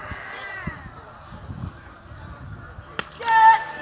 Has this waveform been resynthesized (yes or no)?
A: yes